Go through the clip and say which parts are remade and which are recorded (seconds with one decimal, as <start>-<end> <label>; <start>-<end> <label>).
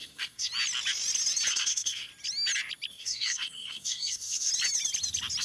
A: 0.0-0.5 remade; 0.5-1.5 recorded; 1.5-2.1 remade; 2.1-2.9 recorded; 2.9-4.5 remade; 4.5-5.4 recorded